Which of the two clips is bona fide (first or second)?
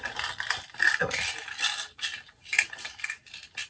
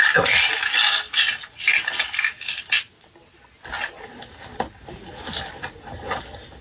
second